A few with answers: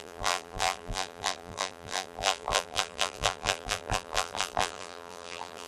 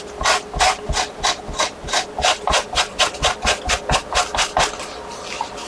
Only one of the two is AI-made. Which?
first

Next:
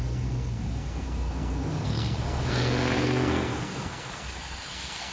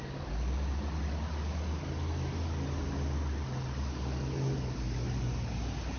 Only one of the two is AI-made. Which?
first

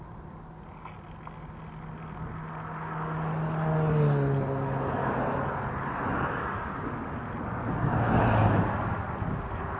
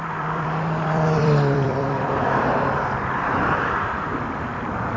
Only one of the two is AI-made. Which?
second